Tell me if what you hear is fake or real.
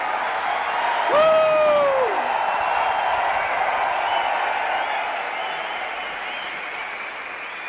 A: real